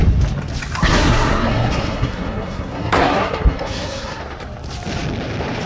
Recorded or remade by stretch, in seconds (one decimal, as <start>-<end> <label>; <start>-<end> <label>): 0.0-0.8 recorded; 0.8-4.2 remade; 4.2-5.7 recorded